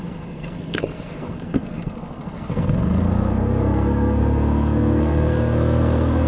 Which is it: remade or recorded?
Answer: remade